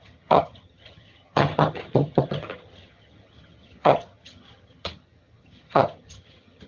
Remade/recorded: remade